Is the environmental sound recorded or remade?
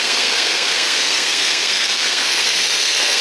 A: remade